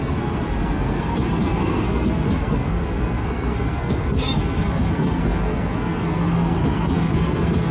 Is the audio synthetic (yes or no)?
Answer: yes